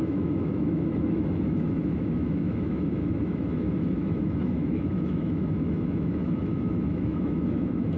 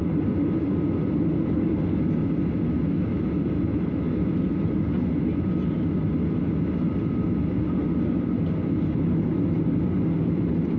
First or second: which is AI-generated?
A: first